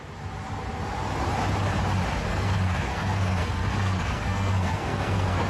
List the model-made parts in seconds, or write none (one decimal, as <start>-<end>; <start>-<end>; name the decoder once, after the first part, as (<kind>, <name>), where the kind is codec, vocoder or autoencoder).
2.3-5.5 (codec, SNAC)